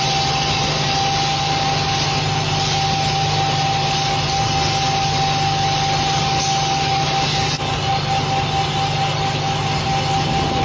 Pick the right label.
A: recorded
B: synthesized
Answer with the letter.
A